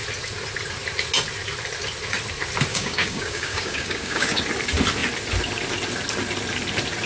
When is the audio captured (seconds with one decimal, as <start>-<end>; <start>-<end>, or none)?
0.0-2.7; 4.4-7.1